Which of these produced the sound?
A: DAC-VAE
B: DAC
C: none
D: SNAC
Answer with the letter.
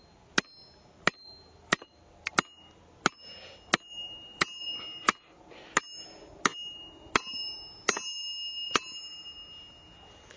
C